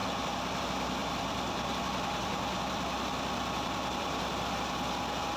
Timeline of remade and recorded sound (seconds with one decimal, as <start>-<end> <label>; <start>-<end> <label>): 0.0-1.0 recorded; 1.0-4.2 remade; 4.2-5.4 recorded